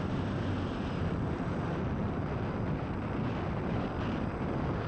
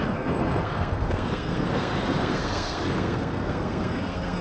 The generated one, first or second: second